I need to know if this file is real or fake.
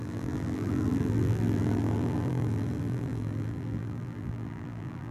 fake